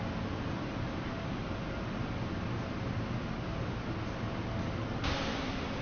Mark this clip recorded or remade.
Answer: recorded